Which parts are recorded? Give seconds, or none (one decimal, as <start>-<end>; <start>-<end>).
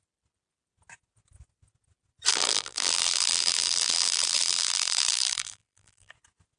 0.0-2.3; 6.1-6.6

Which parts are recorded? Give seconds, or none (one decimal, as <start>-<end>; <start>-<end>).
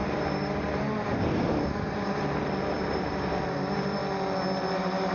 4.0-4.6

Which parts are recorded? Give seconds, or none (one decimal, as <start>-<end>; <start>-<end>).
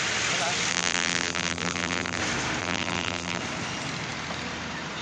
0.0-0.7; 2.2-2.6; 3.4-5.0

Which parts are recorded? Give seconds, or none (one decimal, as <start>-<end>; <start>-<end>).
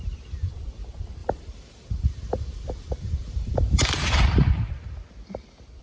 0.0-1.2; 4.7-5.8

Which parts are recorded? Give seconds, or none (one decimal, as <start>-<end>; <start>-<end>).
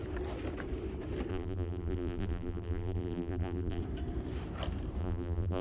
0.0-1.3; 3.8-5.0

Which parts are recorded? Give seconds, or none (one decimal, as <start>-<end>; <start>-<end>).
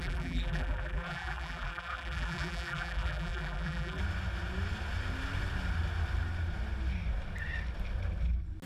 4.0-8.7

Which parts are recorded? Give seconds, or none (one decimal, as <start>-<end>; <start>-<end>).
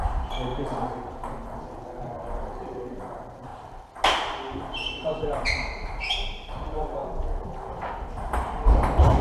0.5-1.6; 3.5-4.6; 7.0-8.1